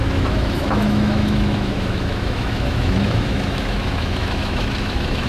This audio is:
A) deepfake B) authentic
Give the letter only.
A